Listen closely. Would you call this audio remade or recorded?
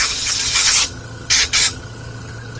remade